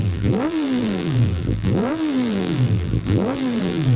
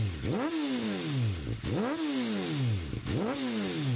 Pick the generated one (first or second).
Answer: first